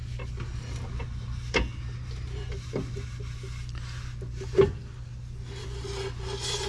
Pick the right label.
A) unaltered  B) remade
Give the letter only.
A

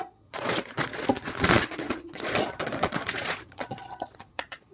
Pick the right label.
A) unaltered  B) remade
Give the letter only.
B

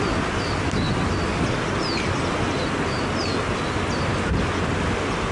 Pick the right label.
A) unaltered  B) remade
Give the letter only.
A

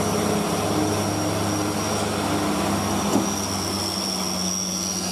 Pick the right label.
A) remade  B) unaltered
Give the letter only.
B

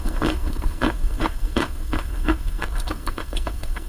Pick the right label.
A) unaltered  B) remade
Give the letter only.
B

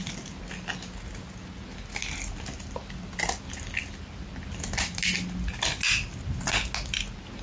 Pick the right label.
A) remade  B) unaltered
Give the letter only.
B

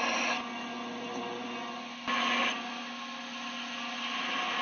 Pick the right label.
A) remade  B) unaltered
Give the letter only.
B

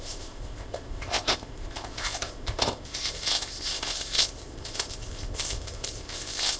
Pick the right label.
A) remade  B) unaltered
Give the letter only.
A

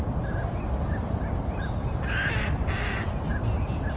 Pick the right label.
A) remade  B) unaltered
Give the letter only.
B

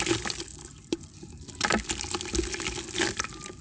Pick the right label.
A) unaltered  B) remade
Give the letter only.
A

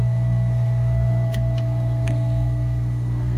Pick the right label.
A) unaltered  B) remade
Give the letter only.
B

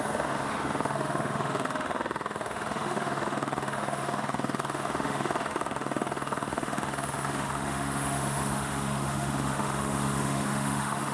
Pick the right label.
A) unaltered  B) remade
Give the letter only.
B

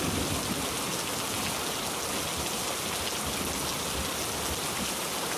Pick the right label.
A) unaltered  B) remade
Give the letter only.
A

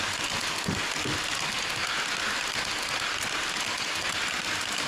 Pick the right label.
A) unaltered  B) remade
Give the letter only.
A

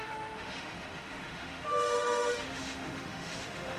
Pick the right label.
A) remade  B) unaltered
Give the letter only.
A